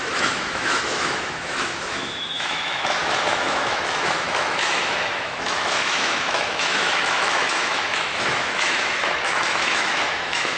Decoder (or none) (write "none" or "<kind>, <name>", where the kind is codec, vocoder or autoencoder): autoencoder, DAC-VAE